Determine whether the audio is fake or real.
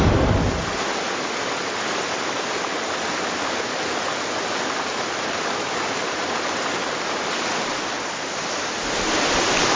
real